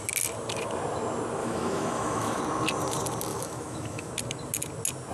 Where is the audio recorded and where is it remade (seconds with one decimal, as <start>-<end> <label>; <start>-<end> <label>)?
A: 0.0-1.4 recorded; 1.4-2.4 remade; 2.4-3.3 recorded; 3.3-4.1 remade; 4.1-5.1 recorded